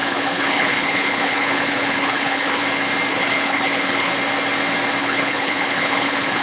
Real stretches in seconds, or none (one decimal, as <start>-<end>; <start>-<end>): 2.6-3.1; 4.1-5.0